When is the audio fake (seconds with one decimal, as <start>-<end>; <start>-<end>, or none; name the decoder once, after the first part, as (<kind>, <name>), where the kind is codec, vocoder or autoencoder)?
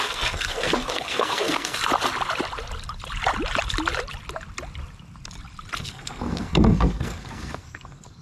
0.0-1.8 (codec, SNAC); 5.8-8.2